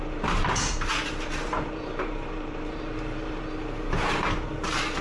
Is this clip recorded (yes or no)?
no